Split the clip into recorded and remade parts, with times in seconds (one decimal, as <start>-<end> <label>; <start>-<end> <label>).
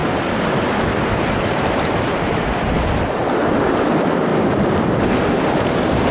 0.0-6.1 recorded